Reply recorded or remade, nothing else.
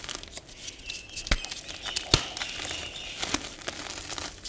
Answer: recorded